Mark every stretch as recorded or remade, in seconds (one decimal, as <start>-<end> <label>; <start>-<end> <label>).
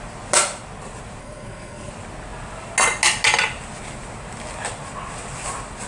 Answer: 0.0-1.2 recorded; 1.2-1.9 remade; 1.9-5.9 recorded